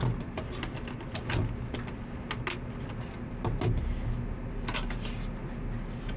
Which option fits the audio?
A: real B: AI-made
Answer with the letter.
A